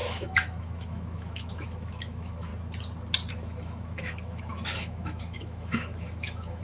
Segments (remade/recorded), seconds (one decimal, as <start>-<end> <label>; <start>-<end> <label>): 0.0-2.5 remade; 2.5-3.3 recorded; 3.3-6.6 remade